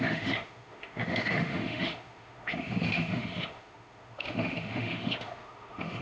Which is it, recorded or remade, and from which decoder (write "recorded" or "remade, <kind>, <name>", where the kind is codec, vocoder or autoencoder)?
remade, autoencoder, DAC-VAE